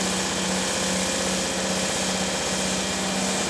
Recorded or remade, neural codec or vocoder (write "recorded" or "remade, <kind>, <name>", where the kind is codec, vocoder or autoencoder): recorded